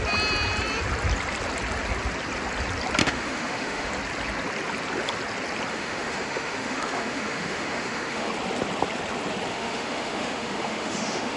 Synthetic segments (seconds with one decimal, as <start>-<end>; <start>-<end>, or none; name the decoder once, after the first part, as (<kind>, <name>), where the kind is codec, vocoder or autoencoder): 3.0-3.9 (autoencoder, DAC-VAE); 5.7-8.3; 9.5-11.4